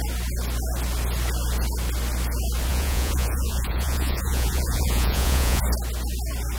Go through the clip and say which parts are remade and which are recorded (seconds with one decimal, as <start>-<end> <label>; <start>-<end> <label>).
0.0-2.7 recorded; 2.7-5.6 remade; 5.6-6.6 recorded